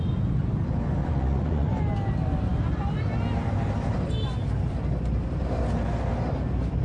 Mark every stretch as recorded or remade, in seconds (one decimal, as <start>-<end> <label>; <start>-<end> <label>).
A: 0.0-1.0 recorded; 1.0-1.8 remade; 1.8-6.8 recorded